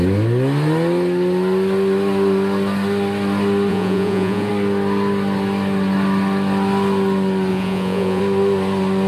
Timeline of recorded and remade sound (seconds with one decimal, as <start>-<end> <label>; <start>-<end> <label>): 0.0-3.7 recorded; 3.7-4.5 remade; 4.5-7.5 recorded; 7.5-8.2 remade; 8.2-9.1 recorded